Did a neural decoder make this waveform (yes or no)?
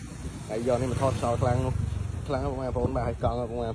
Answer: no